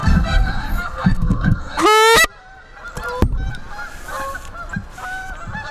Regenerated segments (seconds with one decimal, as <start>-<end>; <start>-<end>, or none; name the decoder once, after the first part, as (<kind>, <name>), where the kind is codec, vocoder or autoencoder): 0.0-1.8 (codec, SNAC)

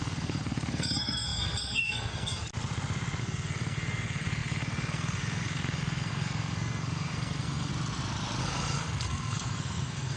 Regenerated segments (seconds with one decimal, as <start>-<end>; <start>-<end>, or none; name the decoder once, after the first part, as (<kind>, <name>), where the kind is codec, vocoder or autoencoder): 0.0-2.5 (codec, SNAC); 3.2-7.7; 8.4-10.2

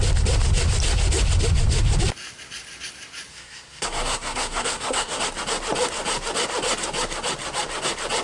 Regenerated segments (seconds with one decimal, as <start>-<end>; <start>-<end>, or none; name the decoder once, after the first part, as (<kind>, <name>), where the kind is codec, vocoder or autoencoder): 3.3-5.2 (codec, SNAC)